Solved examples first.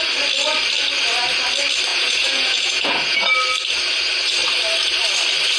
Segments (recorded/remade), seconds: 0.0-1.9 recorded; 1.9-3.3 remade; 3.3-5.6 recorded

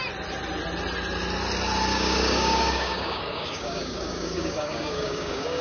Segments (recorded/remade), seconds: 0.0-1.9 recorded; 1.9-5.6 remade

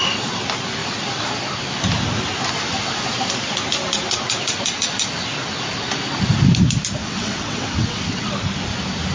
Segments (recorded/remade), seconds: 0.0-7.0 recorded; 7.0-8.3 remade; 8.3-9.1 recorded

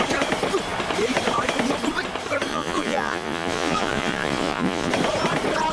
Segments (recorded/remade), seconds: 0.0-2.5 recorded; 2.5-4.9 remade; 4.9-5.7 recorded

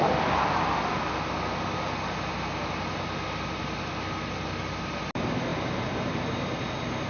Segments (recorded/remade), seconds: 0.0-7.1 recorded

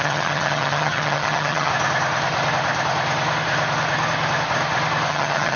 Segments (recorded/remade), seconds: 0.0-1.7 remade; 1.7-5.1 recorded; 5.1-5.6 remade

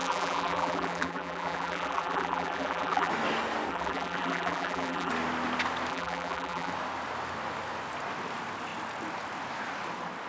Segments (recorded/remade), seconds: 0.0-3.1 remade; 3.1-3.7 recorded; 3.7-5.1 remade; 5.1-5.9 recorded; 5.9-6.7 remade; 6.7-10.3 recorded

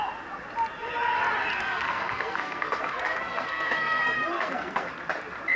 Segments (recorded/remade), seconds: 0.0-1.5 recorded; 1.5-4.9 remade; 4.9-5.6 recorded